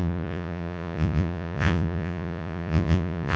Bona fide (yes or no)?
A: no